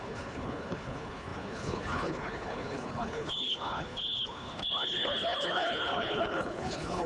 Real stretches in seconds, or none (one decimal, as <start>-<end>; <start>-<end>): none